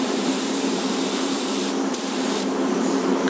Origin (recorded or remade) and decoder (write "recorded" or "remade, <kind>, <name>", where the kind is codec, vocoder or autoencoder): remade, vocoder, BigVGAN v2